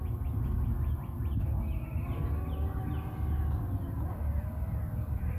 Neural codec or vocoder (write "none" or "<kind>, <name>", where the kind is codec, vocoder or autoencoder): none